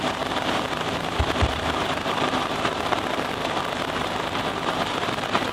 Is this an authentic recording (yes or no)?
no